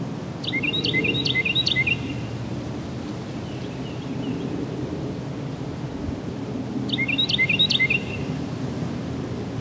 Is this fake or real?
real